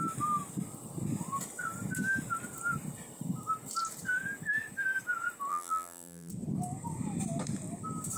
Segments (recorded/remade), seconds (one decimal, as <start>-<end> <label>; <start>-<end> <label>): 0.0-5.5 recorded; 5.5-6.3 remade; 6.3-8.2 recorded